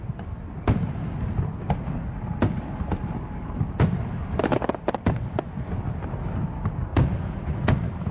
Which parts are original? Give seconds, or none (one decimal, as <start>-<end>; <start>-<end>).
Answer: 0.0-8.1